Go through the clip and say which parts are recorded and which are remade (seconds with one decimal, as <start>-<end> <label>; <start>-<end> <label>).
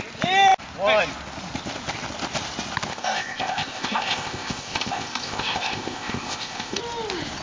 0.0-2.9 recorded; 2.9-6.8 remade; 6.8-7.4 recorded